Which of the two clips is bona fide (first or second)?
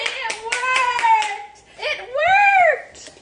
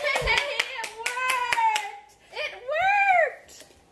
second